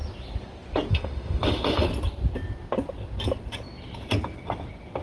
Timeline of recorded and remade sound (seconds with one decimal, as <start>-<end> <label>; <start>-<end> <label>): 0.0-0.9 recorded; 0.9-1.9 remade; 1.9-5.0 recorded